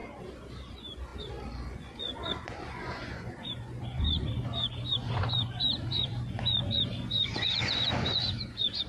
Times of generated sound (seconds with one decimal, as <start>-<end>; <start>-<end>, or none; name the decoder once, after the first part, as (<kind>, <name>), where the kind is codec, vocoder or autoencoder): 0.7-8.9 (vocoder, Vocos)